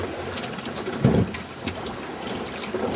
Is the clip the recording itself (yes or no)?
yes